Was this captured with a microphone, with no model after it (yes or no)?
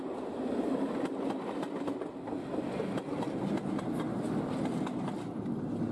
yes